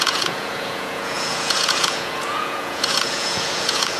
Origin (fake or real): fake